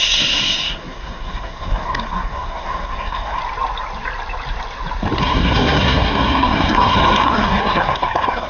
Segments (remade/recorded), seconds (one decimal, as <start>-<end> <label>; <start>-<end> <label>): 0.0-3.4 remade; 3.4-5.2 recorded; 5.2-8.5 remade